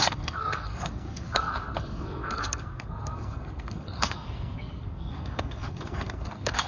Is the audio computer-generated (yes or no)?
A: yes